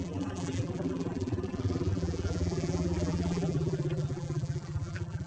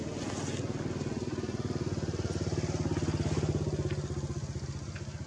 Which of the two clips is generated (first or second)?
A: first